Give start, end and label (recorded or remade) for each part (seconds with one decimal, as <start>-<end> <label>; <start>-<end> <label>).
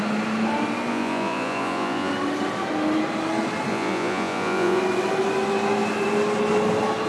0.0-0.9 recorded; 0.9-2.1 remade; 2.1-3.7 recorded; 3.7-4.8 remade; 4.8-7.1 recorded